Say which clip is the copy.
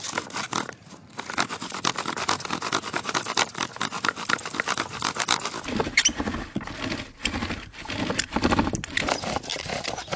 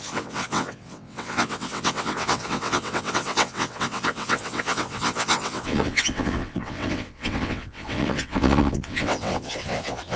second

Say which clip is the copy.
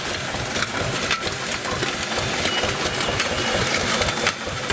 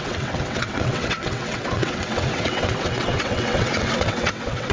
second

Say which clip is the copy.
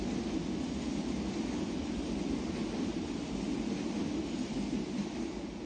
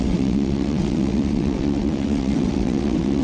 second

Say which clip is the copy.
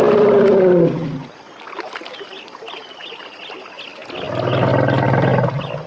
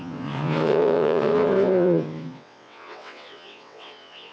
second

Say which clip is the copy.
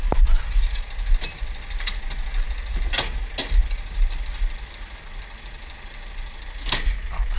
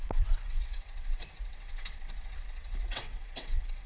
second